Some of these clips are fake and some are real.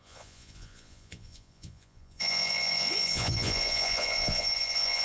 fake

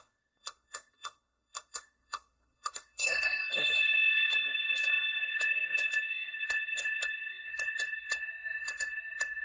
fake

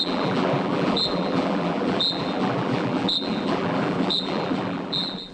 fake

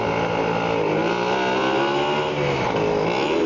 real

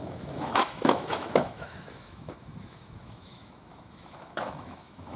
fake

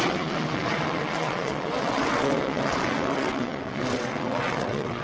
fake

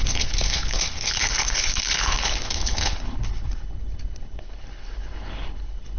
fake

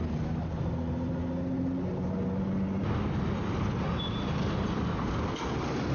real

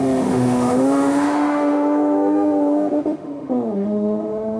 fake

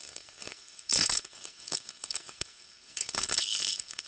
fake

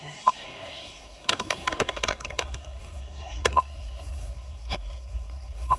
fake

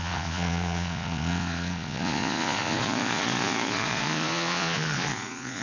fake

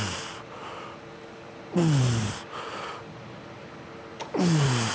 real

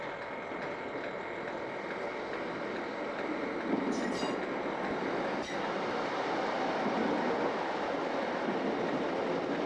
real